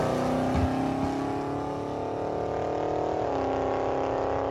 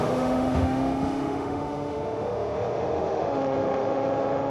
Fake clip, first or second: second